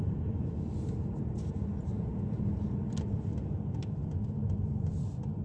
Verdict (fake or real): real